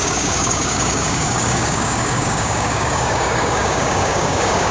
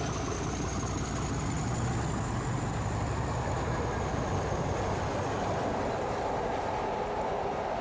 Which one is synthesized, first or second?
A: first